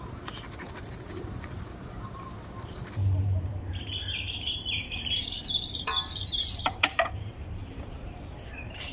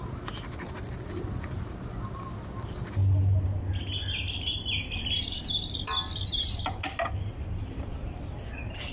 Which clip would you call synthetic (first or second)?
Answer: first